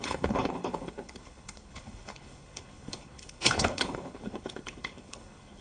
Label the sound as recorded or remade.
remade